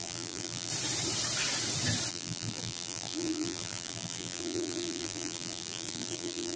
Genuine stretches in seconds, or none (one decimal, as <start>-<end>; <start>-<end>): 0.7-2.1